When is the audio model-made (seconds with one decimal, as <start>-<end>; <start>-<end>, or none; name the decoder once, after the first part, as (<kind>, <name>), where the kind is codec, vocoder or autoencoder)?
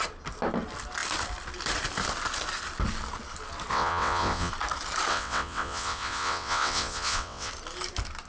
3.7-4.5 (vocoder, WaveNeXt); 5.1-7.5